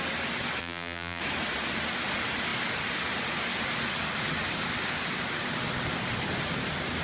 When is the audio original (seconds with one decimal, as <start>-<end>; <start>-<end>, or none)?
0.0-0.6; 1.2-7.0